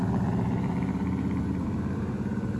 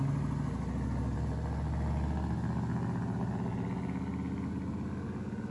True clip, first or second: second